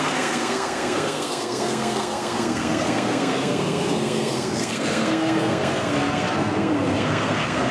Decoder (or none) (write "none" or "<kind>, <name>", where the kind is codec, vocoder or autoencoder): codec, SNAC